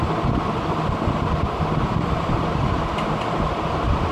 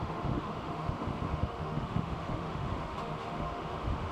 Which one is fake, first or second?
second